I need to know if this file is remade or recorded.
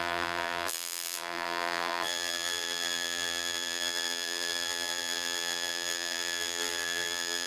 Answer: remade